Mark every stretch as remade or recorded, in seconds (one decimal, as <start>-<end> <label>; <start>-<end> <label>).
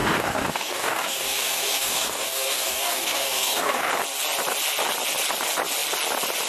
0.0-3.9 remade; 3.9-6.5 recorded